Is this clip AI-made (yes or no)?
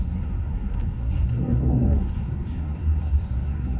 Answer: yes